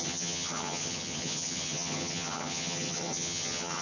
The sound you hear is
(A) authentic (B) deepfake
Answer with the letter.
B